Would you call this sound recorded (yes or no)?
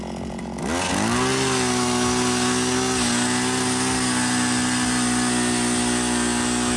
yes